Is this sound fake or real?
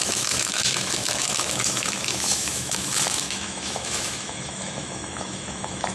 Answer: fake